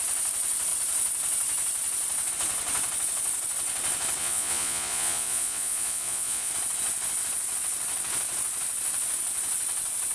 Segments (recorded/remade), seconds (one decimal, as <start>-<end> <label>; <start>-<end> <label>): 0.0-4.2 recorded; 4.2-6.5 remade; 6.5-10.1 recorded